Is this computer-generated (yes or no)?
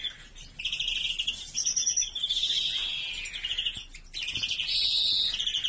no